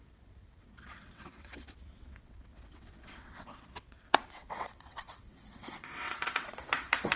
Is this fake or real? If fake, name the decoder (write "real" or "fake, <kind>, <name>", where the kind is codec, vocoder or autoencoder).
fake, vocoder, WaveNeXt